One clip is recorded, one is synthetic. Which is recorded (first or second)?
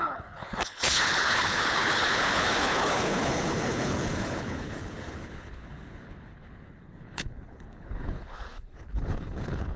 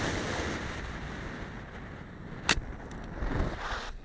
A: second